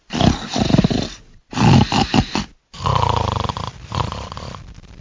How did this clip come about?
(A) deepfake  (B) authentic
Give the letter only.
B